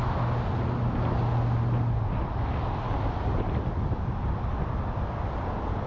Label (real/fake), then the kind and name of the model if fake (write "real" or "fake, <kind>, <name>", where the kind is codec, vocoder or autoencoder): real